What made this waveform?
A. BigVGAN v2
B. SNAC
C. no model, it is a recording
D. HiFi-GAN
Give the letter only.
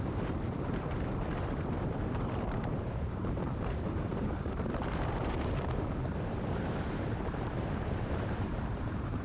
A